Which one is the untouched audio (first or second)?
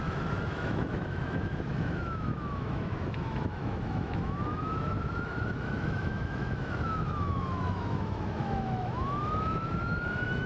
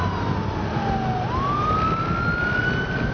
second